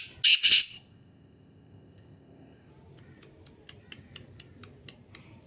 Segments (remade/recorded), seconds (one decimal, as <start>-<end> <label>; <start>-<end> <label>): 0.0-0.4 recorded; 0.4-2.7 remade; 2.7-5.5 recorded